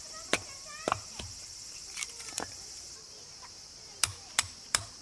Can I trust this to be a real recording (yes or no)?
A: no